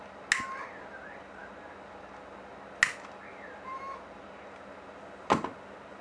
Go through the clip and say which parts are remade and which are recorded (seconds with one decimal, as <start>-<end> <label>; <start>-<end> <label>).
0.0-6.0 recorded